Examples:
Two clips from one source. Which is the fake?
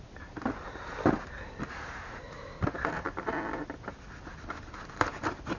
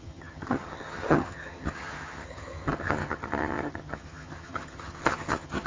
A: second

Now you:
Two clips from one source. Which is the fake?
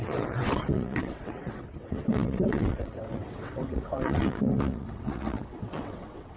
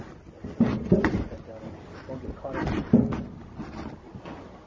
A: first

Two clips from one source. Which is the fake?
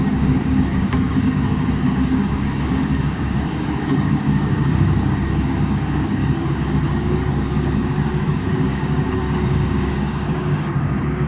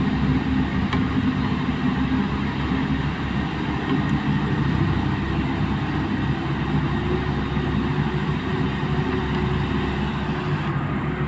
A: first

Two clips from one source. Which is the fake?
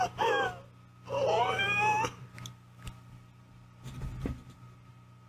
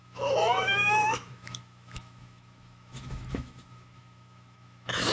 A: second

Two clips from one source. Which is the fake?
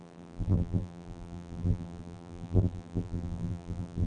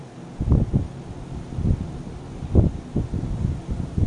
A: first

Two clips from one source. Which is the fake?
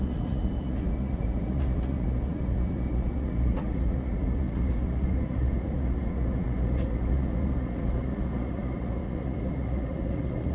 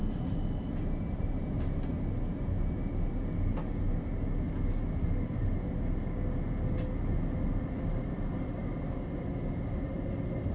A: first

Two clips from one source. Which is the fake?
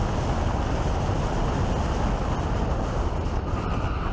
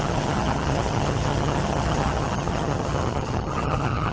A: second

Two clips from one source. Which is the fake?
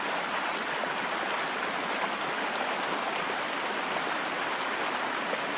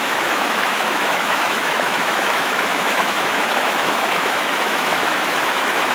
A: second